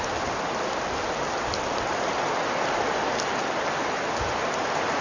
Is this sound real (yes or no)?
yes